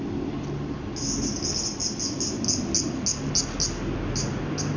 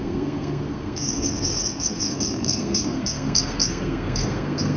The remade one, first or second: second